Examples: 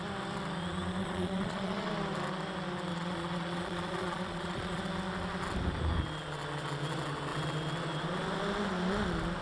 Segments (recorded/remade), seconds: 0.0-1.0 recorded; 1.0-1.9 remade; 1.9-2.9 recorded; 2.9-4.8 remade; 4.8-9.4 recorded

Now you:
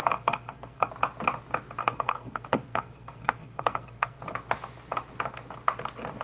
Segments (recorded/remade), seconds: 0.0-0.9 remade; 0.9-1.8 recorded; 1.8-4.2 remade; 4.2-6.2 recorded

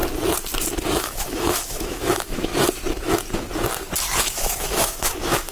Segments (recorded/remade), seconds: 0.0-1.0 recorded; 1.0-2.5 remade; 2.5-4.2 recorded; 4.2-5.5 remade

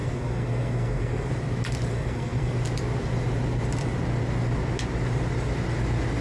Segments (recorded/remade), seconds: 0.0-1.3 remade; 1.3-1.9 recorded; 1.9-2.5 remade; 2.5-6.2 recorded

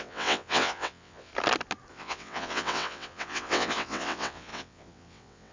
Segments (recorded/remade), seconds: 0.0-1.3 remade; 1.3-1.9 recorded; 1.9-5.5 remade